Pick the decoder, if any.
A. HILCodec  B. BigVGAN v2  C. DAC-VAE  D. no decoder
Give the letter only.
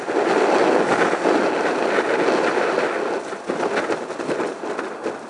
D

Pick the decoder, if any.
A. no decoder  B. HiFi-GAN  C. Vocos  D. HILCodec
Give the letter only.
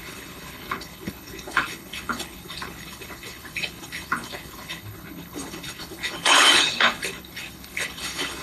D